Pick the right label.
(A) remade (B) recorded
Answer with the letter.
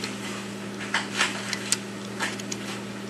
B